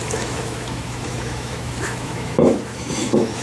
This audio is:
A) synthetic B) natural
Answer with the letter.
A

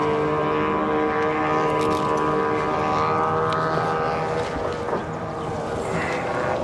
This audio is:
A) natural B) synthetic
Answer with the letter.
A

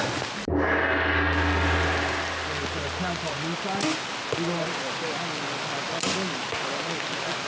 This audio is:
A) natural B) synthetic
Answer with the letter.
A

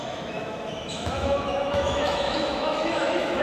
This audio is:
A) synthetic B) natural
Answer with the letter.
A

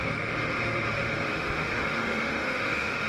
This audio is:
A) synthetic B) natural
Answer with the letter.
A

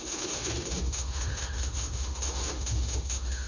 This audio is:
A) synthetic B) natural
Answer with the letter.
A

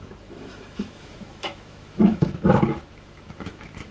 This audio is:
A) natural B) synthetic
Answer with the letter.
B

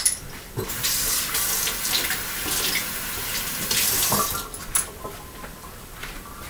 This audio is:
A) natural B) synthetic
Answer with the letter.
A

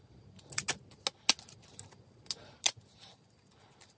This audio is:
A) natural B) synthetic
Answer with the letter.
A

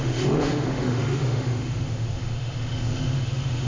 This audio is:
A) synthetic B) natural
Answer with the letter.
A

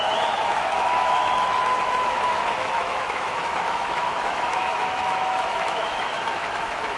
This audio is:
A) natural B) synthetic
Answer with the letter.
B